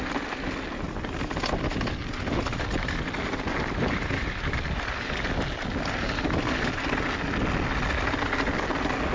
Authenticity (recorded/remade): recorded